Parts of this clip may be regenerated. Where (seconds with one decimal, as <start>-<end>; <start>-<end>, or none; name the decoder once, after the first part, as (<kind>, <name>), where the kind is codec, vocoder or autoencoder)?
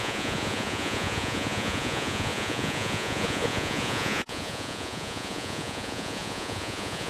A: 0.0-7.1 (vocoder, Vocos)